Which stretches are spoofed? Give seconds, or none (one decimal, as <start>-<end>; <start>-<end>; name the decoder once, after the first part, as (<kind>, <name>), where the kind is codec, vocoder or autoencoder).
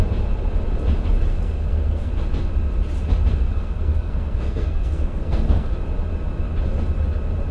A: 1.3-2.1 (codec, SNAC); 3.3-5.7